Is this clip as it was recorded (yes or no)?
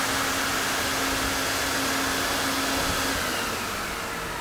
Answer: yes